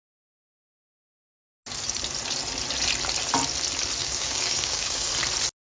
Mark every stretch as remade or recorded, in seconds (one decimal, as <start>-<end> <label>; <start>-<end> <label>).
0.0-4.0 recorded; 4.0-5.1 remade; 5.1-5.6 recorded

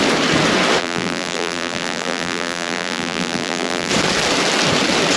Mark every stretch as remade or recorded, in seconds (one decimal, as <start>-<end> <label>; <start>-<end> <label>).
0.0-0.8 recorded; 0.8-3.9 remade; 3.9-5.2 recorded

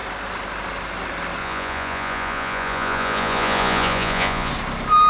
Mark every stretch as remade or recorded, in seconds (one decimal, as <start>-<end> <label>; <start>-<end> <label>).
0.0-1.4 recorded; 1.4-4.5 remade; 4.5-5.1 recorded

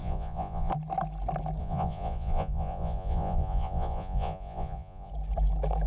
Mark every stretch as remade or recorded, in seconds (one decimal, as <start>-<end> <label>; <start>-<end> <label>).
0.0-0.7 remade; 0.7-1.6 recorded; 1.6-5.1 remade; 5.1-5.9 recorded

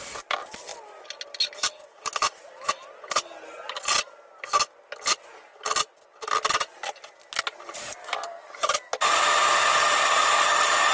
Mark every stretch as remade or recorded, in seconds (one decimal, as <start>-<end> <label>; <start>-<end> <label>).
0.0-10.9 recorded

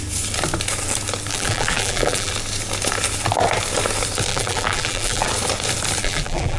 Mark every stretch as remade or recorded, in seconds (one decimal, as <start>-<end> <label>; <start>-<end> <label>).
0.0-1.3 recorded; 1.3-2.3 remade; 2.3-4.3 recorded; 4.3-5.3 remade; 5.3-6.0 recorded; 6.0-6.6 remade